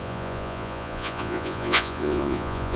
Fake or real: fake